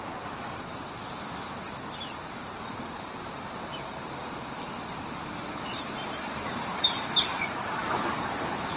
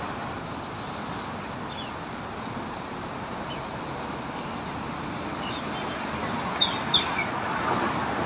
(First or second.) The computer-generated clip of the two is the first